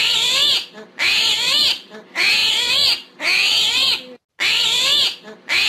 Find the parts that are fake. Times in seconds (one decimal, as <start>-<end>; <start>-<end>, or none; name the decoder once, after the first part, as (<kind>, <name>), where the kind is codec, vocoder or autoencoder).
none